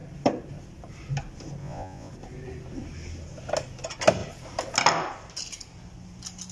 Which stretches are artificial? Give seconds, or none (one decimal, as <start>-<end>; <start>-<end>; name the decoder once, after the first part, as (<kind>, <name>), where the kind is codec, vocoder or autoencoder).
1.6-2.1 (vocoder, Vocos)